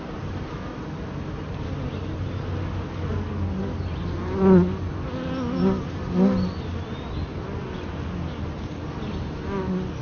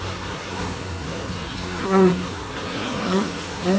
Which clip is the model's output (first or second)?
second